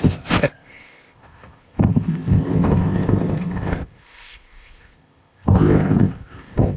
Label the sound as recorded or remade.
remade